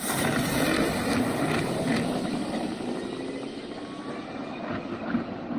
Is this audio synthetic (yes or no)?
no